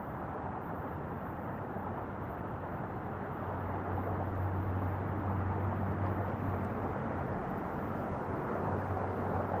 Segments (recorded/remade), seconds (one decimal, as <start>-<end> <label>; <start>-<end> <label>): 0.0-1.8 recorded; 1.8-2.7 remade; 2.7-7.0 recorded; 7.0-7.7 remade; 7.7-9.6 recorded